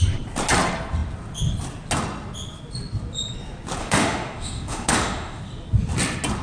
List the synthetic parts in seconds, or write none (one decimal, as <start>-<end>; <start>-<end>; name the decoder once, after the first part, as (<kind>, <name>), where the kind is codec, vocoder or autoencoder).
3.8-5.4 (autoencoder, DAC-VAE)